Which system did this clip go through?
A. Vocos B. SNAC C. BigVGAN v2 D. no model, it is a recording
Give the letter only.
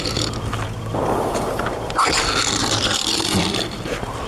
C